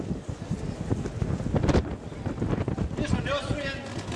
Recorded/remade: recorded